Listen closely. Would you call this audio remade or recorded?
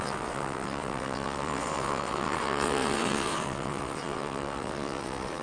remade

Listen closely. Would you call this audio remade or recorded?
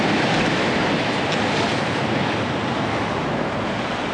recorded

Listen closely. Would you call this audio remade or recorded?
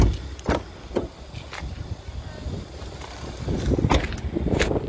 recorded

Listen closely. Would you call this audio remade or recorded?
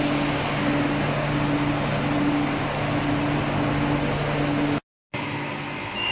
recorded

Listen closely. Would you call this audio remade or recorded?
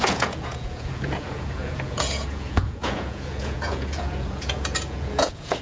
remade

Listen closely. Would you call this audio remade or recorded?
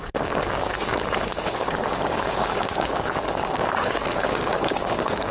remade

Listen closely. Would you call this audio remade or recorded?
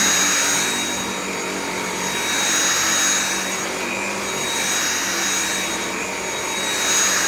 recorded